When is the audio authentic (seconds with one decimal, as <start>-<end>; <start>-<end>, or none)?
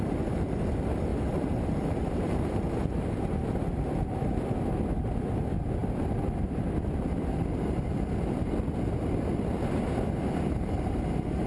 0.0-1.1; 3.6-11.5